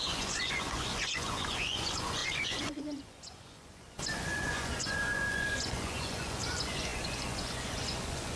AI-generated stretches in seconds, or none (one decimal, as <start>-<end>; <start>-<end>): 0.0-8.4